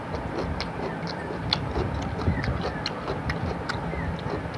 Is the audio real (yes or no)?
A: yes